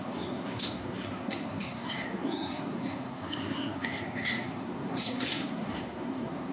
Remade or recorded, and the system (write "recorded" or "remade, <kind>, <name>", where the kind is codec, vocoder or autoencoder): remade, codec, SNAC